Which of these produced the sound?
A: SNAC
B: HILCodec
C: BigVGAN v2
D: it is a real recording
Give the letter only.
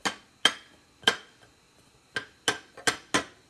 D